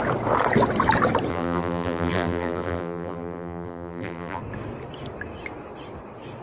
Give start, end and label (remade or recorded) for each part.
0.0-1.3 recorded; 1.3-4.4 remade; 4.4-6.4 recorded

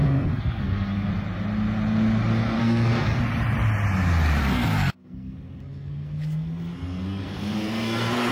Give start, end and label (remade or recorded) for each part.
0.0-1.1 remade; 1.1-2.6 recorded; 2.6-3.2 remade; 3.2-4.4 recorded; 4.4-8.3 remade